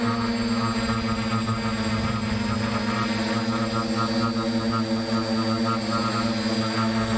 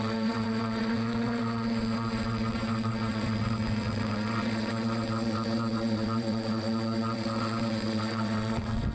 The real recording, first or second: first